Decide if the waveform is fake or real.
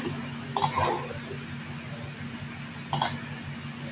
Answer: real